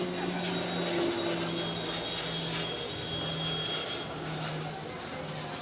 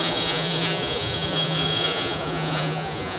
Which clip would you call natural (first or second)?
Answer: first